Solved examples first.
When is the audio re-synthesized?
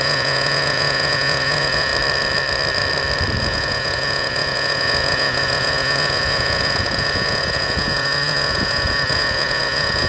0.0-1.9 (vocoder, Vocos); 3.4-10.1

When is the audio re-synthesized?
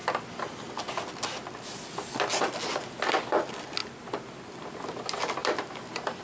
3.8-4.8 (vocoder, BigVGAN v2)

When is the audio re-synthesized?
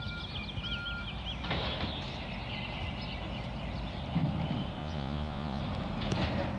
4.8-5.6 (vocoder, Vocos)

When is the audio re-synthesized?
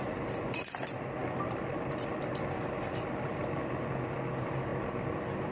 none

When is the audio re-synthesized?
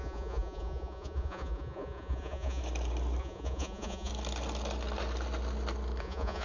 0.0-2.6 (vocoder, Vocos); 3.2-4.1; 6.0-6.4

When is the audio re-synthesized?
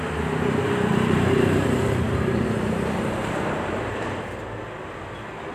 0.9-4.2 (vocoder, BigVGAN v2)